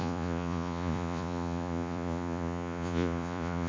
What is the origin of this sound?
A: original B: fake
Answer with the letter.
B